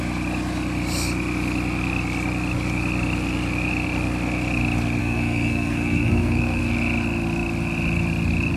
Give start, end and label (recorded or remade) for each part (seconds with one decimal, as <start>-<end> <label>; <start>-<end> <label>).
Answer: 0.0-5.0 recorded; 5.0-6.6 remade; 6.6-8.6 recorded